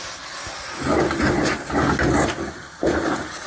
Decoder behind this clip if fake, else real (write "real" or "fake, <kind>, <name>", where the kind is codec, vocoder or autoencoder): real